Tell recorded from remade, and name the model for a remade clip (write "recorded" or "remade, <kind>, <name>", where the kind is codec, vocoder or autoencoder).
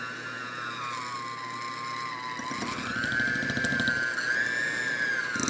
recorded